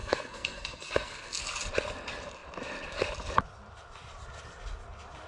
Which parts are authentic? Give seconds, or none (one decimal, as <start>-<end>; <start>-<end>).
1.4-5.3